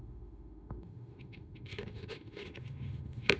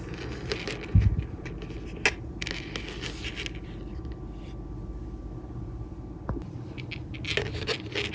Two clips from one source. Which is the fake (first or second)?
first